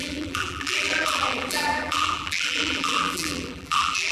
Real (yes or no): no